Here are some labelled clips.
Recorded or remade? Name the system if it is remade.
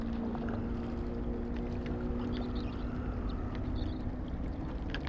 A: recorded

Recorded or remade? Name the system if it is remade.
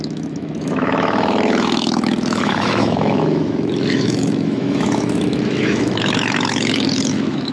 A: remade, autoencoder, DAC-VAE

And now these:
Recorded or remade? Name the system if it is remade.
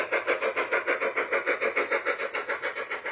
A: recorded